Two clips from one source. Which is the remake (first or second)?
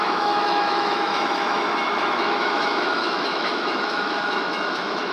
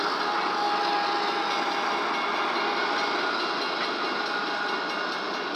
first